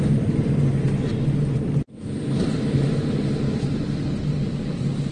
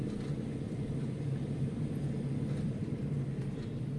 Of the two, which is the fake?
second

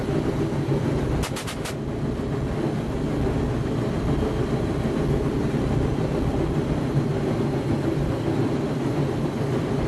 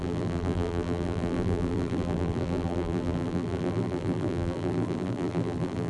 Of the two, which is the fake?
second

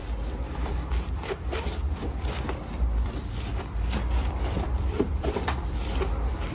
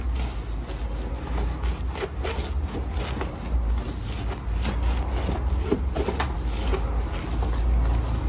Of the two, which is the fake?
first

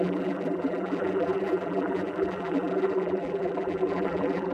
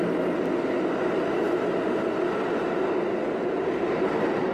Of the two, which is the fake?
first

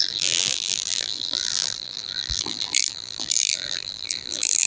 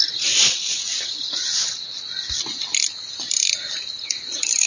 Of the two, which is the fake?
first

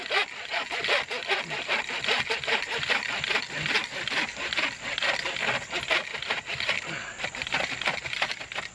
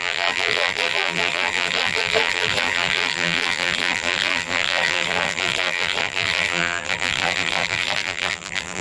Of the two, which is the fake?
second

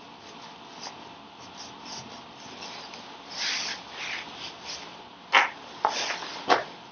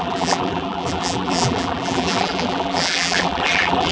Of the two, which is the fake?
second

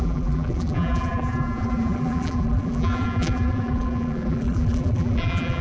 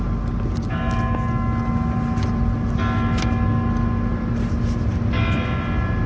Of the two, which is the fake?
first